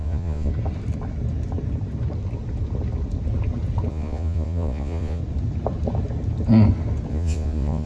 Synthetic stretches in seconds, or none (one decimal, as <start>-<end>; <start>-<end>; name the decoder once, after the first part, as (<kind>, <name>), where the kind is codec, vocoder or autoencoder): 0.0-0.5 (vocoder, Vocos); 3.9-5.2; 7.1-7.9

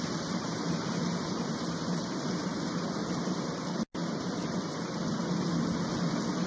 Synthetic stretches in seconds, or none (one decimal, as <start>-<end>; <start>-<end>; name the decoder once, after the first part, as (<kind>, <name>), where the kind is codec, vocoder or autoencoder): none

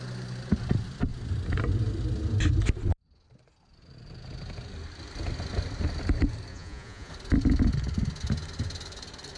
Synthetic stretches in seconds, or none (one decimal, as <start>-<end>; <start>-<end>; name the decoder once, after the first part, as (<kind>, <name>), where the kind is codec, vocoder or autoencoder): 6.5-7.1 (vocoder, Vocos)